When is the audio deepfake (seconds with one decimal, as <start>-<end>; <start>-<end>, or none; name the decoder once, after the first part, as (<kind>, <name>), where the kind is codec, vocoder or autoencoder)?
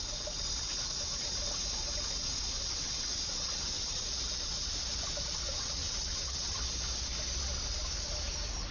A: 3.1-4.0 (vocoder, WaveNeXt); 5.8-6.6